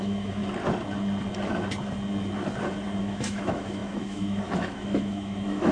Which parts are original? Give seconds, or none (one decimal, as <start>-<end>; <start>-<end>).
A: 0.4-3.0